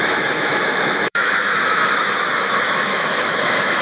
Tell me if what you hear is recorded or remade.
remade